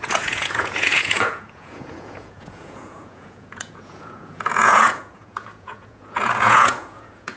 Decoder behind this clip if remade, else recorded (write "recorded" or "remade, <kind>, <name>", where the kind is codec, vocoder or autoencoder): remade, vocoder, Vocos